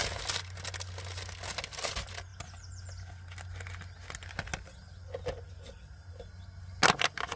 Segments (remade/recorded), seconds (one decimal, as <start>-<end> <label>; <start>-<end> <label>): 0.0-7.4 recorded